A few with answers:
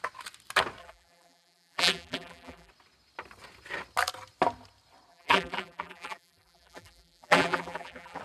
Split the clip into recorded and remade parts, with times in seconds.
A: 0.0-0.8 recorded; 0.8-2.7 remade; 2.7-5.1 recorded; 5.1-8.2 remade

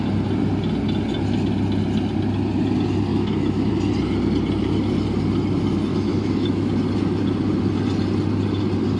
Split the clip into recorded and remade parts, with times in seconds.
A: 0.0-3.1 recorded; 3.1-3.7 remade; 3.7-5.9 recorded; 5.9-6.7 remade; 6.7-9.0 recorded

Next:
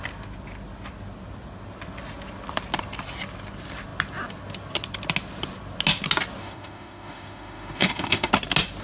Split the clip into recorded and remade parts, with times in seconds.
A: 0.0-6.4 recorded; 6.4-8.3 remade; 8.3-8.8 recorded